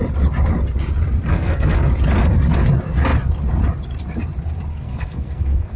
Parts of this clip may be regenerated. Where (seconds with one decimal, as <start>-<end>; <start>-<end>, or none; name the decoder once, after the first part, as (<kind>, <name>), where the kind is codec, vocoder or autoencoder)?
1.3-1.9 (codec, SNAC); 4.7-5.8